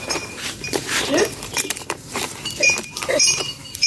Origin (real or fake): fake